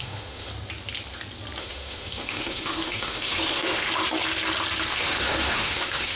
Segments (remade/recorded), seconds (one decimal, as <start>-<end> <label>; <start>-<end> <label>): 0.0-0.5 remade; 0.5-1.6 recorded; 1.6-3.9 remade; 3.9-4.9 recorded; 4.9-6.2 remade

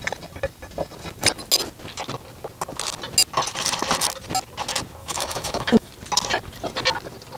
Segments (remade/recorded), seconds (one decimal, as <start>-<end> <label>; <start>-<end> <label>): 0.0-5.0 recorded; 5.0-5.9 remade; 5.9-7.4 recorded

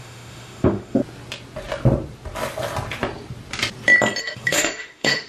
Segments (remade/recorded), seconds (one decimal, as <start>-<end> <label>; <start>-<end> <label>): 0.0-1.0 remade; 1.0-4.2 recorded; 4.2-5.3 remade

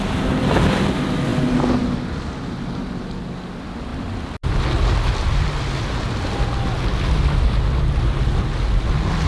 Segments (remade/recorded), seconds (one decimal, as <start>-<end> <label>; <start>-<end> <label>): 0.0-9.3 recorded